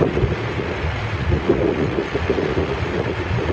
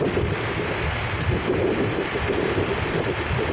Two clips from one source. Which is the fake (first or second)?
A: first